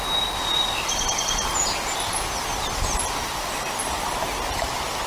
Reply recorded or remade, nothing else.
recorded